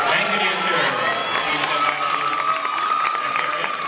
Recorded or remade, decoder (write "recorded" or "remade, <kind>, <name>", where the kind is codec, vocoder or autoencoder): recorded